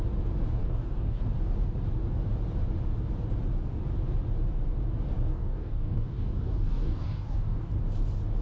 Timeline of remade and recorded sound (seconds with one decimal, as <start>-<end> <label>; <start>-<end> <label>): 0.0-0.6 recorded; 0.6-1.2 remade; 1.2-5.3 recorded; 5.3-7.7 remade; 7.7-8.4 recorded